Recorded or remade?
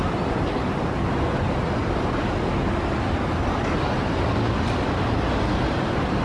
recorded